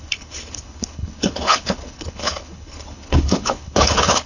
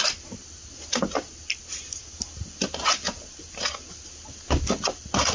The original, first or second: second